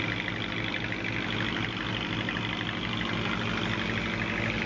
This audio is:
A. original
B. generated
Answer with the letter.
A